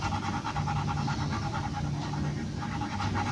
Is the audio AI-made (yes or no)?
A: no